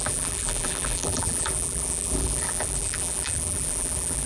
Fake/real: fake